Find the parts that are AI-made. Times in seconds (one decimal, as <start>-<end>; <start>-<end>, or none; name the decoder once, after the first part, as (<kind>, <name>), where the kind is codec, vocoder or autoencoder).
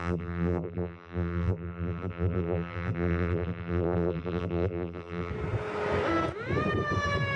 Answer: 0.0-5.3 (vocoder, BigVGAN v2)